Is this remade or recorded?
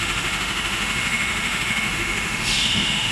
remade